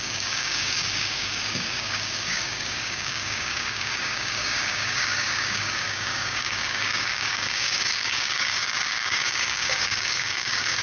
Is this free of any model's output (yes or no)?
no